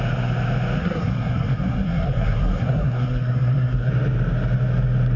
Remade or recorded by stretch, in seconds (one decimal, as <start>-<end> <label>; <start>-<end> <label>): 0.0-0.8 recorded; 0.8-3.9 remade; 3.9-5.2 recorded